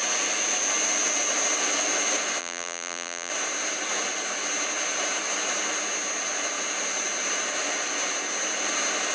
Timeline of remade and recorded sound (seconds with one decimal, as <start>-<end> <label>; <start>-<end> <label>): 0.0-2.4 recorded; 2.4-3.3 remade; 3.3-9.1 recorded